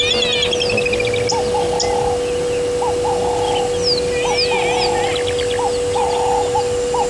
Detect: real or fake real